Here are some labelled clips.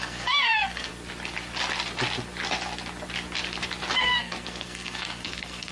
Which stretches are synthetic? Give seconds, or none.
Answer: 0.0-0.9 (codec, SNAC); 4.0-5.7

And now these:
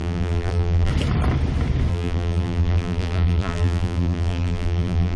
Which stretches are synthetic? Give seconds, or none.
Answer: 0.0-0.9 (vocoder, BigVGAN v2); 1.9-5.2

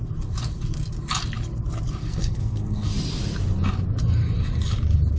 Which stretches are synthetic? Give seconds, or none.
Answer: 2.0-2.9 (codec, SNAC)

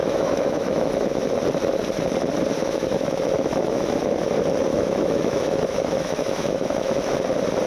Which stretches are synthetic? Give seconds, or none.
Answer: 0.0-1.3 (autoencoder, DAC-VAE); 2.6-4.1; 4.7-7.2

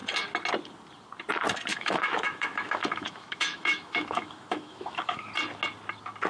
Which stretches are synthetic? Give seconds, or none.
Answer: 1.7-5.3 (autoencoder, DAC-VAE)

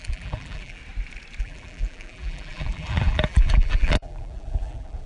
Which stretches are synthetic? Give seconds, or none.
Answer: 0.0-0.8 (vocoder, BigVGAN v2); 1.4-5.1